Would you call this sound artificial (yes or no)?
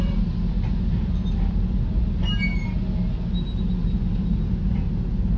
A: no